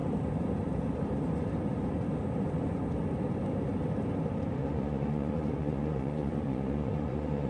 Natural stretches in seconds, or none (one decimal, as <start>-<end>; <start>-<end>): 0.0-4.6